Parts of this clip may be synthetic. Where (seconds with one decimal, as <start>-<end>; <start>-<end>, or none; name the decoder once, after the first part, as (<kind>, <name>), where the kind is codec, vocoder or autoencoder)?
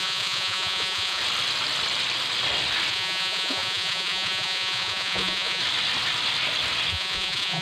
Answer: 0.0-1.2 (vocoder, Vocos); 2.9-5.6; 6.9-7.6